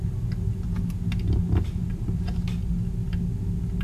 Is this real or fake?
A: real